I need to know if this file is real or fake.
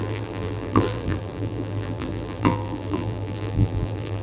fake